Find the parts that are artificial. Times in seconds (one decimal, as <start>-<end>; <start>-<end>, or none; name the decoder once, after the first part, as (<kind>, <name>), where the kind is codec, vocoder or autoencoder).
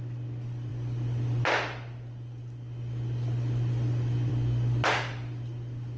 none